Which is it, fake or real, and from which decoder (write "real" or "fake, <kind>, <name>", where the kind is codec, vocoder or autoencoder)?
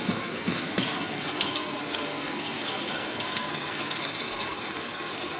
fake, codec, SNAC